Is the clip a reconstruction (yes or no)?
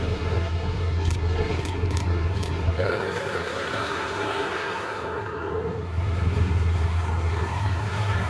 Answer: yes